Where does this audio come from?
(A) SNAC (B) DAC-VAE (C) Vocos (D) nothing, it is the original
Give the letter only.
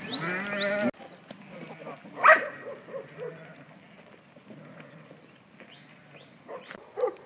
D